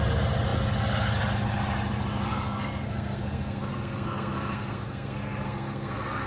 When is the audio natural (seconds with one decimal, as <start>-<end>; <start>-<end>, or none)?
0.0-2.3